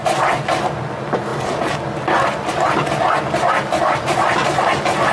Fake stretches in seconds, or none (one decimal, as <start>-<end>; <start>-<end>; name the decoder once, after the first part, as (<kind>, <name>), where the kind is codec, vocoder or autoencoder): none